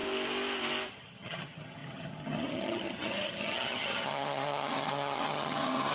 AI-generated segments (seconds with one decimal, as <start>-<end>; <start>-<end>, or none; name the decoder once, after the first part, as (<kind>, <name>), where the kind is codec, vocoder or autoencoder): 0.9-5.9 (vocoder, HiFi-GAN)